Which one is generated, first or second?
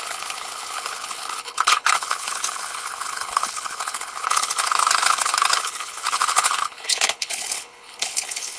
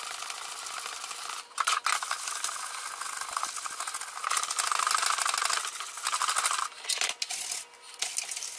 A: first